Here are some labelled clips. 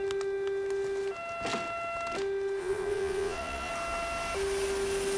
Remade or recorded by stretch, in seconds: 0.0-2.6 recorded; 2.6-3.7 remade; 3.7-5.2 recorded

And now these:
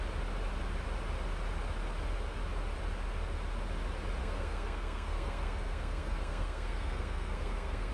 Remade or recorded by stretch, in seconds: 0.0-4.2 recorded; 4.2-7.9 remade

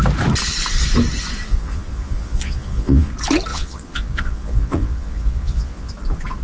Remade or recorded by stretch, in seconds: 0.0-1.5 recorded; 1.5-3.1 remade; 3.1-3.5 recorded; 3.5-5.9 remade; 5.9-6.4 recorded

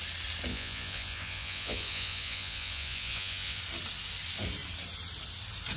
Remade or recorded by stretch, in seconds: 0.0-0.5 recorded; 0.5-3.6 remade; 3.6-5.8 recorded